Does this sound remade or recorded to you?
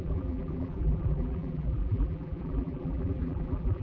remade